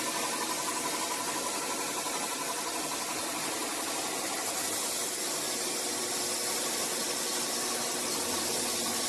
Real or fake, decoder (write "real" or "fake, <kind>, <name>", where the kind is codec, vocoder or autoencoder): real